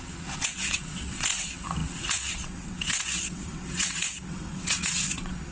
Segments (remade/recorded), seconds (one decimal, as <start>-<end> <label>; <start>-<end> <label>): 0.0-5.5 remade